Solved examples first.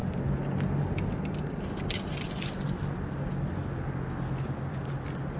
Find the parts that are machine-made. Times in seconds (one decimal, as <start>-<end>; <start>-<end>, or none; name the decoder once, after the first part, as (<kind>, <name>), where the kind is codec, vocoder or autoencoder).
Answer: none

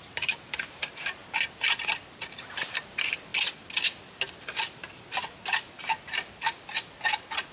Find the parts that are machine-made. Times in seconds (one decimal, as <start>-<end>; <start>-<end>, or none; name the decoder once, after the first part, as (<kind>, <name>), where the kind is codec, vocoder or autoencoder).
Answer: 0.0-1.2 (vocoder, BigVGAN v2); 2.6-3.3

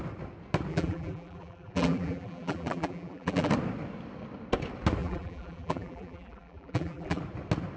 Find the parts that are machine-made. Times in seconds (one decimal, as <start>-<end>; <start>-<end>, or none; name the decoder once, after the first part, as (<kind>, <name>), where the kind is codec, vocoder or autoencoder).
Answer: 0.7-3.5 (vocoder, BigVGAN v2); 5.0-7.2